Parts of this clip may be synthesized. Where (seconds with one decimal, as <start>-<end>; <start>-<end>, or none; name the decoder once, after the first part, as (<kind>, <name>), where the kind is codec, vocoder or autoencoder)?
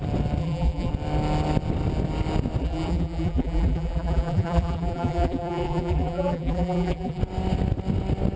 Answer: 0.4-0.9 (vocoder, BigVGAN v2); 2.6-7.2